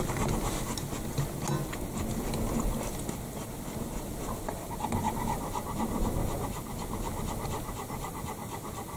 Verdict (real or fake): real